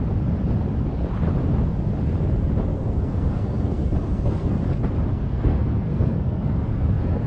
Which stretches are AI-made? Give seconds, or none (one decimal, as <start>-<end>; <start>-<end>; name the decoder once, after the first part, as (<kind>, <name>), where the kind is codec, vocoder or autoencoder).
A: 2.7-4.6 (codec, SNAC); 5.1-7.3